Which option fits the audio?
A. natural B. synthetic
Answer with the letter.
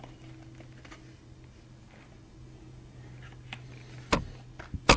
A